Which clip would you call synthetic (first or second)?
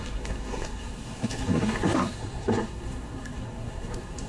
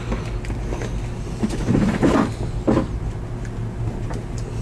first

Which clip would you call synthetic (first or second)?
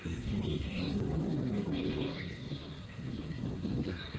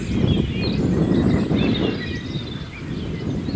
first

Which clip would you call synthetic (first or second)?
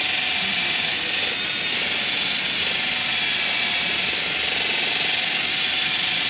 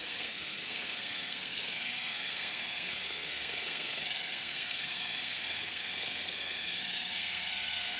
second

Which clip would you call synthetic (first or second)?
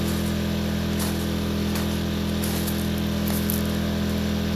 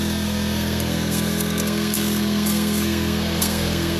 second